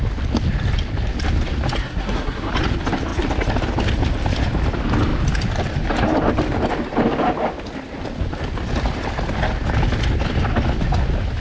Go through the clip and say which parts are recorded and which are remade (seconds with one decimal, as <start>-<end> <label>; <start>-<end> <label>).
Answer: 0.0-1.8 recorded; 1.8-2.5 remade; 2.5-11.4 recorded